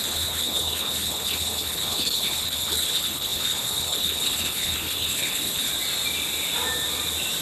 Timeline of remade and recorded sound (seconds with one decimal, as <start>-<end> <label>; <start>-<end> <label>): 0.0-5.7 remade; 5.7-7.4 recorded

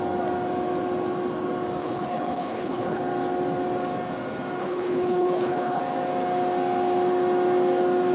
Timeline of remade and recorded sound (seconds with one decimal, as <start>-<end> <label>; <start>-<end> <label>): 0.0-1.8 recorded; 1.8-3.0 remade; 3.0-4.6 recorded; 4.6-5.8 remade; 5.8-8.1 recorded

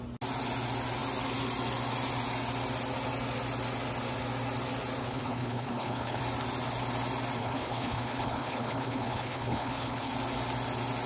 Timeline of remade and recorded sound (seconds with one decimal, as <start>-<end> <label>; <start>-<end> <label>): 0.0-5.0 recorded; 5.0-6.2 remade; 6.2-7.4 recorded; 7.4-10.1 remade; 10.1-11.1 recorded

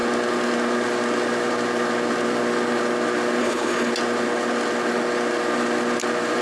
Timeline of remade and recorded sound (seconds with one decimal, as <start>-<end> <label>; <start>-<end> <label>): 0.0-3.4 recorded; 3.4-3.9 remade; 3.9-6.4 recorded